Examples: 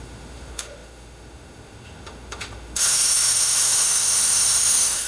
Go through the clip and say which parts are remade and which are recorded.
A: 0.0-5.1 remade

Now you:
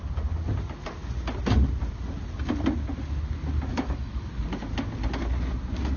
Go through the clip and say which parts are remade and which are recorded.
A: 0.0-3.7 recorded; 3.7-4.3 remade; 4.3-6.0 recorded